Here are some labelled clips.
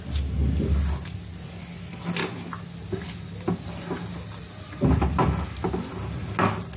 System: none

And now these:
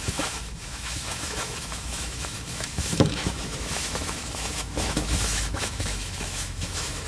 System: autoencoder, DAC-VAE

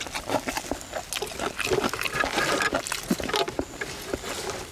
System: none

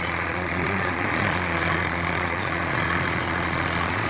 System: vocoder, Vocos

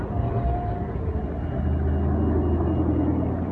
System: none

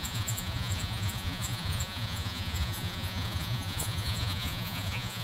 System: vocoder, Vocos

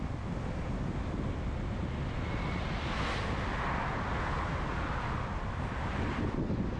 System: none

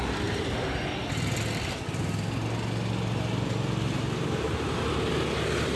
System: none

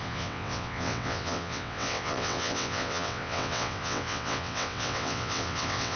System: vocoder, WaveNeXt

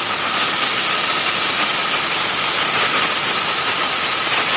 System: none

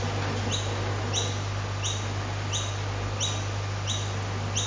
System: none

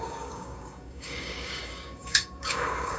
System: codec, DAC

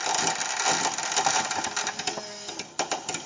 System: none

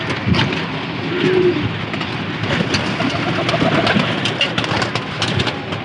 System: none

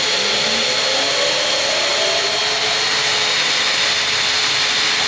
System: none